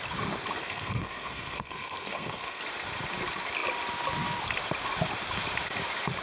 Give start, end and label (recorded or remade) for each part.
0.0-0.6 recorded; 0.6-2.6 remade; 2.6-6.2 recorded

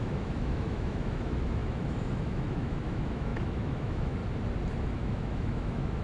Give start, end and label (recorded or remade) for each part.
0.0-4.2 remade; 4.2-4.9 recorded; 4.9-6.0 remade

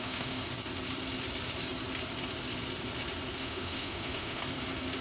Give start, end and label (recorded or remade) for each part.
0.0-0.4 remade; 0.4-3.4 recorded; 3.4-4.4 remade; 4.4-5.0 recorded

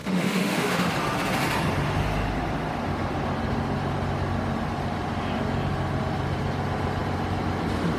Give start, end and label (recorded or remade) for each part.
0.0-0.9 remade; 0.9-8.0 recorded